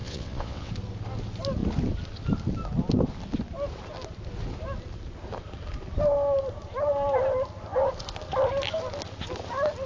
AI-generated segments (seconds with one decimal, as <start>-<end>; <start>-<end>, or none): 0.0-0.7

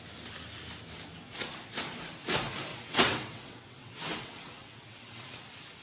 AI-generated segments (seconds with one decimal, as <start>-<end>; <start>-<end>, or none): 2.7-5.3

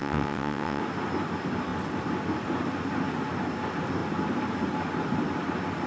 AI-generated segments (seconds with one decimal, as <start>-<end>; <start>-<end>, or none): 0.0-0.8